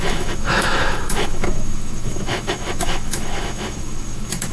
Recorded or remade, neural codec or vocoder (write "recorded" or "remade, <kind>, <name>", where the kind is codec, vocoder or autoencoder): remade, autoencoder, DAC-VAE